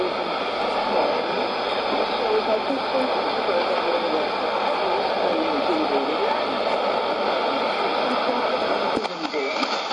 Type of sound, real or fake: real